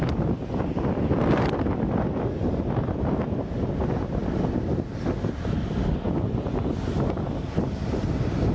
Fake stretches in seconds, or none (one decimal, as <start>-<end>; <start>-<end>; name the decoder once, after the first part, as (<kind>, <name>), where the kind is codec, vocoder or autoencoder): none